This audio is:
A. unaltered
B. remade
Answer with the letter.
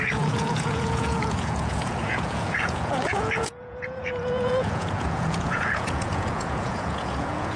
B